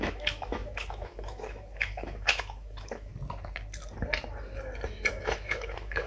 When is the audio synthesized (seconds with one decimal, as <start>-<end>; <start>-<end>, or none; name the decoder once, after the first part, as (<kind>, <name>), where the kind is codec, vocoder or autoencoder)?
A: 0.0-3.1 (autoencoder, DAC-VAE); 5.1-6.1